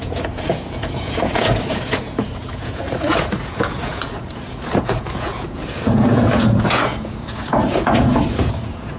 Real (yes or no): no